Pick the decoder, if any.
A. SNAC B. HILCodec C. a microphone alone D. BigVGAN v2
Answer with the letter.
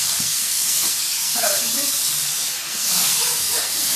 A